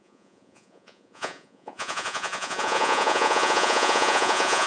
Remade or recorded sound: remade